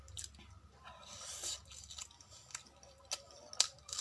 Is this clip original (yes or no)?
yes